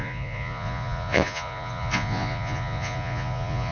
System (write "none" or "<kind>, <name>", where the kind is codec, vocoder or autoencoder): vocoder, Vocos